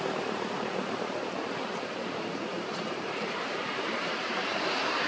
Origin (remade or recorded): remade